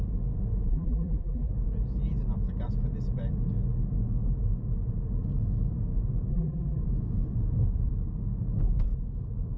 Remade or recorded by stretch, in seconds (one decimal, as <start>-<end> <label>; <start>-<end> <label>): 0.0-0.7 recorded; 0.7-1.5 remade; 1.5-6.3 recorded; 6.3-6.8 remade; 6.8-9.6 recorded